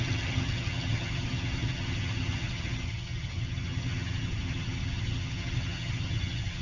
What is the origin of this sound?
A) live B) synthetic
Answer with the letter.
B